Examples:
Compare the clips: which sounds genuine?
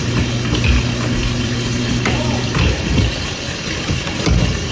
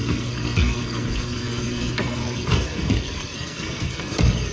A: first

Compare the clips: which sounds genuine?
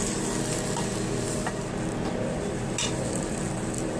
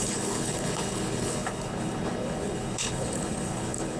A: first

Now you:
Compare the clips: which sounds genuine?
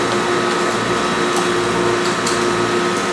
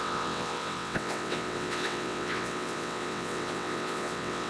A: first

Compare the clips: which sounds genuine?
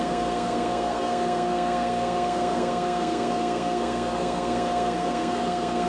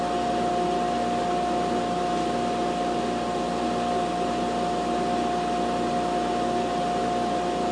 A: second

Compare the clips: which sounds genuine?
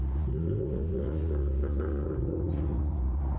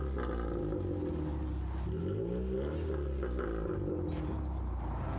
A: second